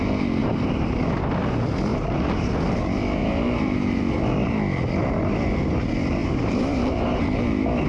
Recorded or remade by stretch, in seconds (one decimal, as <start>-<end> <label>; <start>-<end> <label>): 0.0-0.4 recorded; 0.4-1.1 remade; 1.1-1.9 recorded; 1.9-2.5 remade; 2.5-3.2 recorded; 3.2-4.0 remade; 4.0-6.2 recorded; 6.2-7.2 remade; 7.2-7.9 recorded